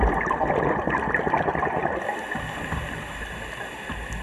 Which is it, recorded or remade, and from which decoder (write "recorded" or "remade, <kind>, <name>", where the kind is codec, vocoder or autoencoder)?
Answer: recorded